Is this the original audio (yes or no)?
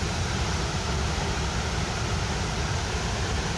yes